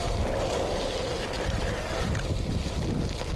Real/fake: real